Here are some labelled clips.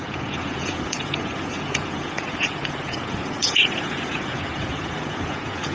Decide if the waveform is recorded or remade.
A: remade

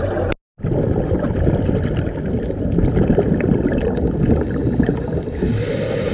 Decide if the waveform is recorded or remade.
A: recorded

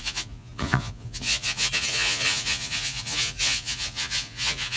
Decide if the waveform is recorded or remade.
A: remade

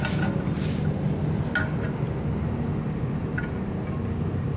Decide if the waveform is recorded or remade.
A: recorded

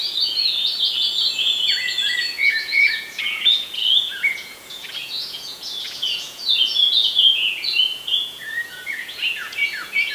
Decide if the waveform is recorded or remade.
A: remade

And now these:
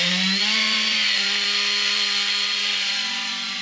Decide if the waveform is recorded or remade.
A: remade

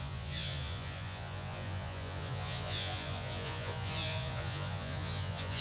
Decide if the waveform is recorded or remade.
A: remade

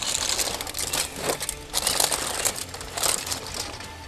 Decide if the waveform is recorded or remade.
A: recorded